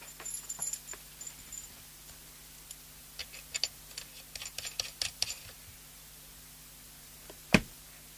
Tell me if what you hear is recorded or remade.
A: recorded